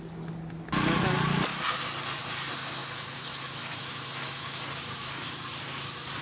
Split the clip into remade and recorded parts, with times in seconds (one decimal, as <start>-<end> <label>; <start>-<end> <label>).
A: 0.0-2.8 recorded; 2.8-4.7 remade; 4.7-6.2 recorded